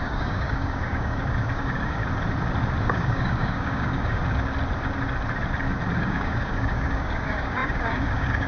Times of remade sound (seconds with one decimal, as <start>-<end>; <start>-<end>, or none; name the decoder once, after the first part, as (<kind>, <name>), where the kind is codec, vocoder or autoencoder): 0.0-2.0 (codec, DAC); 2.8-4.2; 6.0-8.5